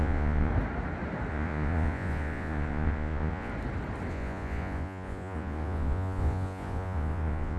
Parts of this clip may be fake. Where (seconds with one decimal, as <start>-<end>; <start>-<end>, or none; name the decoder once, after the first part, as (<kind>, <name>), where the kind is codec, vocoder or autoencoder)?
0.0-0.5 (vocoder, Vocos); 1.3-3.5; 4.1-7.6